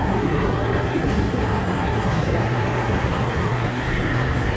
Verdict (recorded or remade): remade